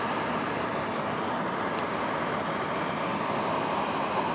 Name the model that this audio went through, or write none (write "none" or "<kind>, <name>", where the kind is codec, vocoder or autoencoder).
none